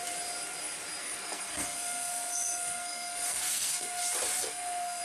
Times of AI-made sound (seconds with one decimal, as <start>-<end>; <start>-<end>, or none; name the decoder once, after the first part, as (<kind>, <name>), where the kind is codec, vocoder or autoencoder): 1.0-4.0 (codec, SNAC); 4.4-5.0

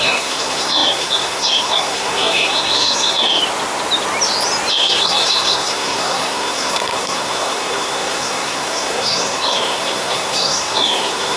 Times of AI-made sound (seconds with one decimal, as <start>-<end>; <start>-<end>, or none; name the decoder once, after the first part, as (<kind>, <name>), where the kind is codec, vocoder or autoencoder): 0.0-3.4 (codec, SNAC); 4.7-11.4

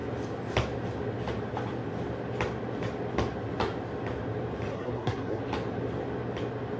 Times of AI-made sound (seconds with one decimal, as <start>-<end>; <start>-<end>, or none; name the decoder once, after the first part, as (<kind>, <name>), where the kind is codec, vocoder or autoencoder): 4.7-5.4 (codec, SNAC)

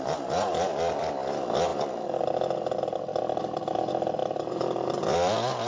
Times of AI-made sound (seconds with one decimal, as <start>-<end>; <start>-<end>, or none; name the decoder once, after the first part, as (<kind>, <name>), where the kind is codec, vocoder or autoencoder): none

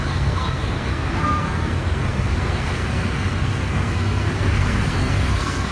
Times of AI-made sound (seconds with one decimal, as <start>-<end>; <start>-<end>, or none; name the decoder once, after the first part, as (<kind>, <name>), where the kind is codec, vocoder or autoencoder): 0.0-5.7 (codec, SNAC)

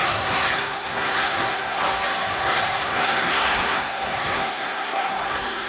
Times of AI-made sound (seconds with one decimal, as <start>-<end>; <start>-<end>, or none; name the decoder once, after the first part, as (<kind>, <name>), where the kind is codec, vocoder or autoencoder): 0.0-1.8 (codec, SNAC); 2.3-5.7